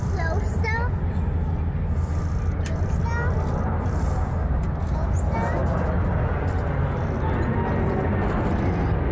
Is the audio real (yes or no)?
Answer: yes